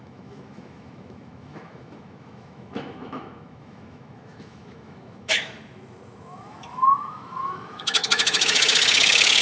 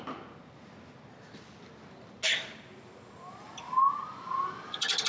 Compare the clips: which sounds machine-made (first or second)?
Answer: first